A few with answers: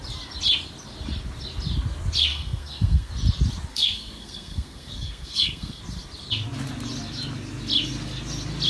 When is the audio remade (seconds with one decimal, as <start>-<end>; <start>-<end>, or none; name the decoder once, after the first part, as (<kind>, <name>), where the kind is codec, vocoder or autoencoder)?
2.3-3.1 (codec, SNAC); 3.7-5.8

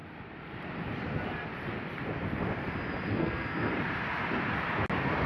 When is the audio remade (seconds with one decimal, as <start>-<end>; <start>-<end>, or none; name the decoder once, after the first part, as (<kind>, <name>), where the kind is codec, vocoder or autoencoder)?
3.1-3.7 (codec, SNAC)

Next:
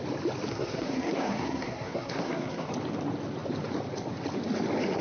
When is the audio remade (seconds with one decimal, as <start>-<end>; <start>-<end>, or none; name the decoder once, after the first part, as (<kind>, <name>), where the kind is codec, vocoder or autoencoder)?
0.5-2.7 (codec, SNAC)

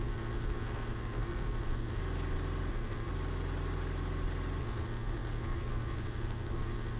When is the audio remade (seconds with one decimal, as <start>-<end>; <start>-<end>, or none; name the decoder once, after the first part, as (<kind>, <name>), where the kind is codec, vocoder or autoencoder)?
0.0-2.0 (codec, SNAC); 2.7-3.1; 4.6-7.0

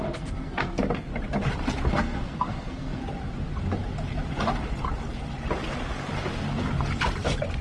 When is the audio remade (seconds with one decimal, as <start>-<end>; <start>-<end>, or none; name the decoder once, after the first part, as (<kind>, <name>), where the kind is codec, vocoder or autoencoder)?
0.0-1.1 (codec, SNAC); 1.9-3.0

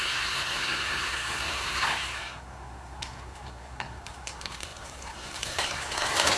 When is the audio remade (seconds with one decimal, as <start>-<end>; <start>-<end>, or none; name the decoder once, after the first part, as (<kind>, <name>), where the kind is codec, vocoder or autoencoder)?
0.0-6.4 (codec, SNAC)

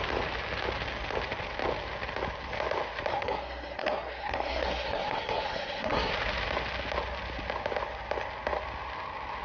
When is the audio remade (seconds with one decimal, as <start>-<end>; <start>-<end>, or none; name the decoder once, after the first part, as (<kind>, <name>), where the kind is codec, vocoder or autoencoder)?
3.1-6.1 (codec, SNAC)